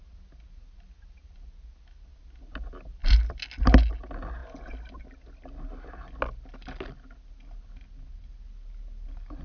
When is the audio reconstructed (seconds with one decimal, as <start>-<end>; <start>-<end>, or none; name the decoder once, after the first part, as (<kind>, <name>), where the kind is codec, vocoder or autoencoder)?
none